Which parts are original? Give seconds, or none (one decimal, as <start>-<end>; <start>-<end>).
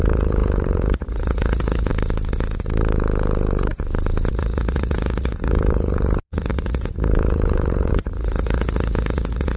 1.9-4.3